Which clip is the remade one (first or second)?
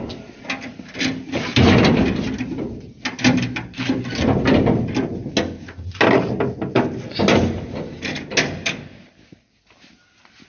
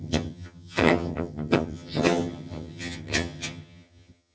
second